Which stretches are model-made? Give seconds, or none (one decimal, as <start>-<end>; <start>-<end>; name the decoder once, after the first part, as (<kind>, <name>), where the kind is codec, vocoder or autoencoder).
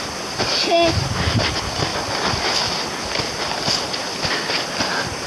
none